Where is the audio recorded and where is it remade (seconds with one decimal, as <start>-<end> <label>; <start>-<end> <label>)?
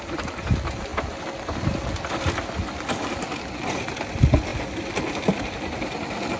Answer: 0.0-6.4 recorded